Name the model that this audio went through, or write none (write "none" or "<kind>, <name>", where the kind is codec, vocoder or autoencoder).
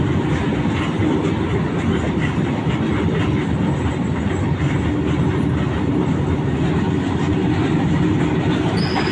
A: none